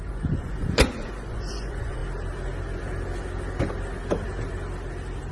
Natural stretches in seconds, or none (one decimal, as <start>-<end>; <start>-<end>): 2.0-5.3